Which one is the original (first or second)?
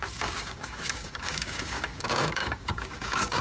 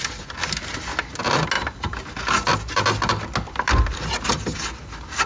second